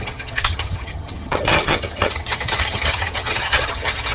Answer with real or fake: fake